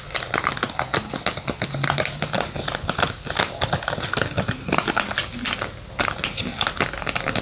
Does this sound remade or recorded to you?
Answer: recorded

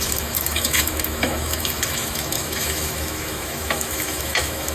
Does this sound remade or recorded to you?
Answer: remade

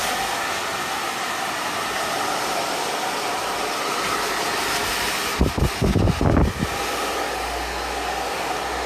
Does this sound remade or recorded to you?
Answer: recorded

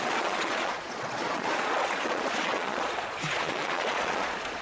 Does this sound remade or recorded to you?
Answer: remade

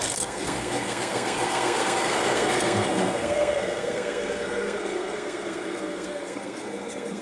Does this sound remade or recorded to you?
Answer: remade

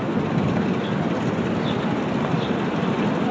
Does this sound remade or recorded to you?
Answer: recorded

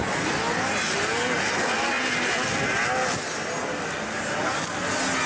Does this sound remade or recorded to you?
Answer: recorded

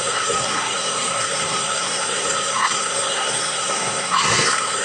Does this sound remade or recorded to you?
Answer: remade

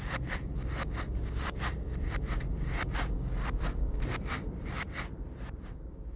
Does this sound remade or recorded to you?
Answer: remade